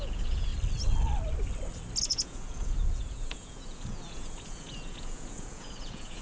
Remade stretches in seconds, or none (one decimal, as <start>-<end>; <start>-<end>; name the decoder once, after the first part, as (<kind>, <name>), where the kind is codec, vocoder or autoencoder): 0.0-0.5 (vocoder, Vocos); 2.0-6.2